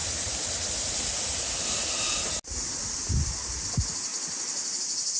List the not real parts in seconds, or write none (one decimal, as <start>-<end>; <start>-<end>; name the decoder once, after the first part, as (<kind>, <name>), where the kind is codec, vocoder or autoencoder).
none